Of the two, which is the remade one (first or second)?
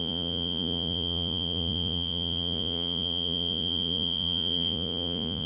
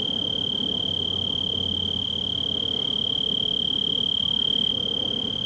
first